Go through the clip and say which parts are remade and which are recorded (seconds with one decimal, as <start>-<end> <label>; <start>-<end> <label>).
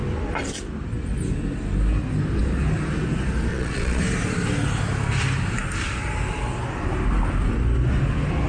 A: 0.0-3.5 recorded; 3.5-4.0 remade; 4.0-8.5 recorded